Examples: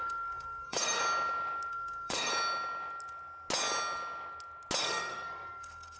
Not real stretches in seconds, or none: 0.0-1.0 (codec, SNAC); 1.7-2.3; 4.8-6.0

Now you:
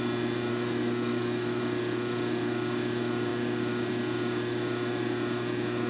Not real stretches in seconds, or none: 0.5-1.6 (autoencoder, DAC-VAE)

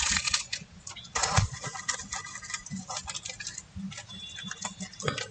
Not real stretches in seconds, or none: 0.0-1.7 (vocoder, Vocos)